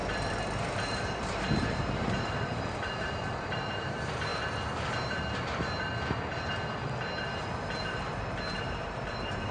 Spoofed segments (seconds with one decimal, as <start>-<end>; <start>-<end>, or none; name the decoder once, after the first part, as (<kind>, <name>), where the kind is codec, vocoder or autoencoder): 0.0-4.3 (vocoder, BigVGAN v2); 7.8-9.5